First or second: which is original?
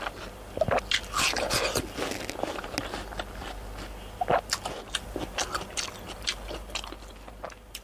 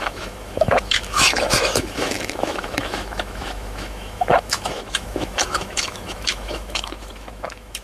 first